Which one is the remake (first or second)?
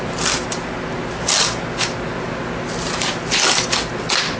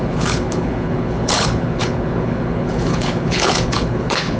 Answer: second